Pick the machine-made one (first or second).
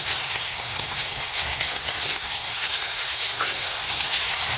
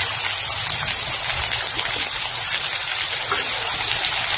first